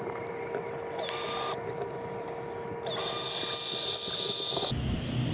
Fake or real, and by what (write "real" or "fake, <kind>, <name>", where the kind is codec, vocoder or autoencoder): real